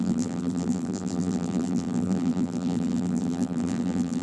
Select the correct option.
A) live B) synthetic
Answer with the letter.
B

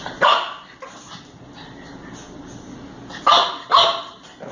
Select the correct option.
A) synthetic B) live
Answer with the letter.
B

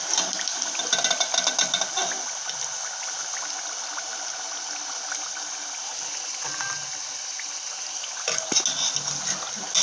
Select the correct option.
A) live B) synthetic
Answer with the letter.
A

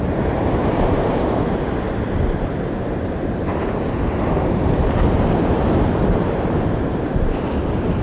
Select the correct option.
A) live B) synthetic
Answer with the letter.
B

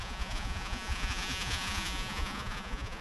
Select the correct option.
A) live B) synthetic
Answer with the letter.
B